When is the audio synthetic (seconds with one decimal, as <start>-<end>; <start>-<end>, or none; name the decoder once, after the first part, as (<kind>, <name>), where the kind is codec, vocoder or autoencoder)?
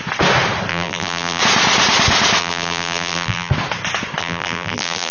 0.7-1.4 (vocoder, BigVGAN v2); 2.4-3.5; 4.2-5.1